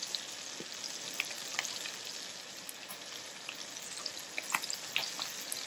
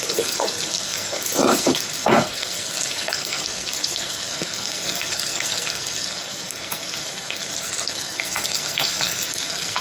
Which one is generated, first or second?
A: second